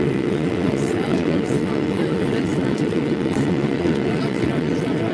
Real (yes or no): no